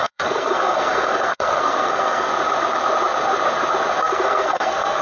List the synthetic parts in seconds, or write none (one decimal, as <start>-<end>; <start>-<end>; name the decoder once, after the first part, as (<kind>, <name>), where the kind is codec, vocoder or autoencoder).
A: 0.0-2.3 (codec, SNAC); 4.0-5.0